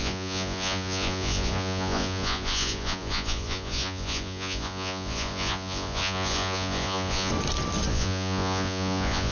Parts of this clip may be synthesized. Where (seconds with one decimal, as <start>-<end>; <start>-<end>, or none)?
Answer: 0.0-7.3; 7.9-9.3